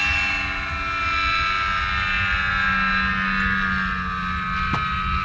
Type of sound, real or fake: real